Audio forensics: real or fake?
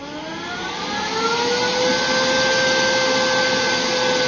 real